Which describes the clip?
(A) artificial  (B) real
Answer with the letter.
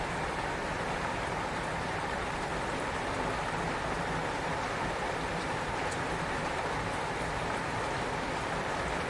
A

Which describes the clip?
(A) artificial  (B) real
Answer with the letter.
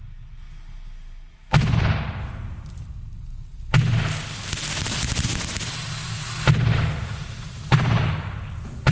B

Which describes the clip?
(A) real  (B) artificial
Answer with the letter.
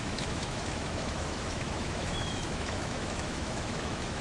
B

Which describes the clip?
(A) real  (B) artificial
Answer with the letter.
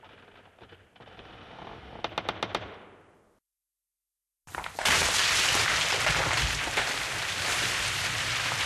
A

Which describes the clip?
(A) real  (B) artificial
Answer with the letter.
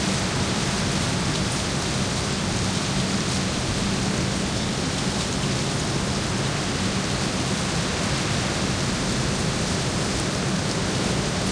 A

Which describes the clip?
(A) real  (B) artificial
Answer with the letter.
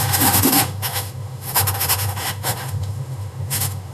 B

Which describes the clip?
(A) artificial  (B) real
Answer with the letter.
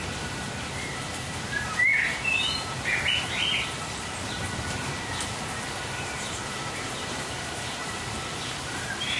A